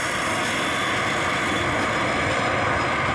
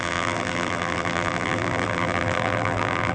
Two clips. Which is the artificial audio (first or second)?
second